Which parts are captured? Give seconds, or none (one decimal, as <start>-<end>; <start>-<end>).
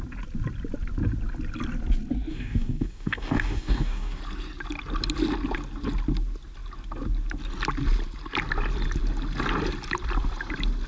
0.0-2.3; 4.2-10.9